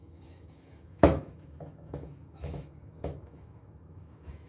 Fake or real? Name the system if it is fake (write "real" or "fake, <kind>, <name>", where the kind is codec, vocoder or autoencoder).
fake, autoencoder, DAC-VAE